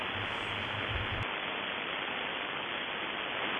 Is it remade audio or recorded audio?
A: recorded